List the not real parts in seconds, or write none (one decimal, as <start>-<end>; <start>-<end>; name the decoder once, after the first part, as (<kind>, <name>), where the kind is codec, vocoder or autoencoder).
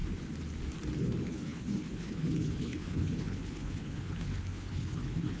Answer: 1.0-5.4 (codec, HILCodec)